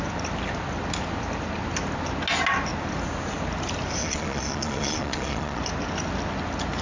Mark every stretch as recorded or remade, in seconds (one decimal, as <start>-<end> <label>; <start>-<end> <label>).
0.0-4.0 recorded; 4.0-5.6 remade; 5.6-6.8 recorded